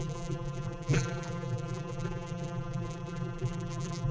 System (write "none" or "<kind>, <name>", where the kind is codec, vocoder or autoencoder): vocoder, BigVGAN v2